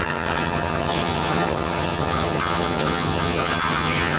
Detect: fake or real fake